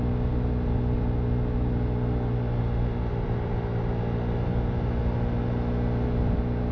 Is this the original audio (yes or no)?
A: yes